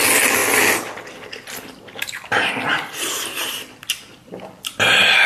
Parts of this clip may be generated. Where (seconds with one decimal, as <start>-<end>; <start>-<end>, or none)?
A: 3.4-4.1